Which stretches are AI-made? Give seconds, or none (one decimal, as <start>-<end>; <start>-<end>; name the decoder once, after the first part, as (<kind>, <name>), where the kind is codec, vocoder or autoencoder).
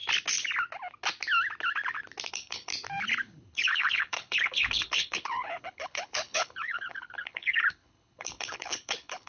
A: 2.3-2.7 (codec, HILCodec); 3.2-9.3